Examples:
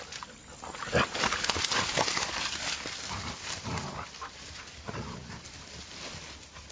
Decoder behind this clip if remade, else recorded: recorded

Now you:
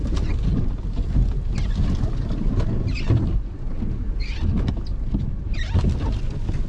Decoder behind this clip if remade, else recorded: recorded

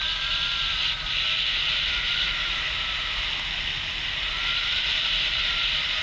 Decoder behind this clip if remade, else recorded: recorded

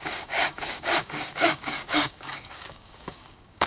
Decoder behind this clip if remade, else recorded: remade, codec, DAC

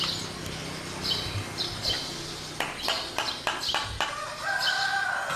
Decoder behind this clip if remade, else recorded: recorded